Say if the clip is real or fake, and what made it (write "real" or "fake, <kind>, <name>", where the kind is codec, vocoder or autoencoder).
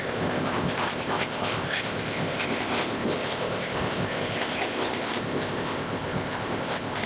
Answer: fake, codec, ZipCodec